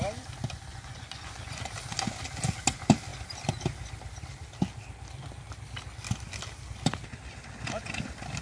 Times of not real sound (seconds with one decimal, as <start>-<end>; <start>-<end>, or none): 0.7-1.6